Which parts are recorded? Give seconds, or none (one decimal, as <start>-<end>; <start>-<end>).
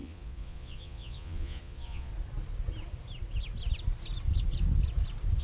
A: 2.1-5.4